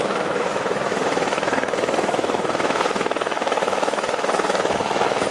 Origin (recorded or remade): remade